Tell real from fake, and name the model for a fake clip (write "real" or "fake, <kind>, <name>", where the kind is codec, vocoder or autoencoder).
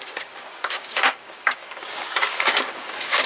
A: fake, codec, DAC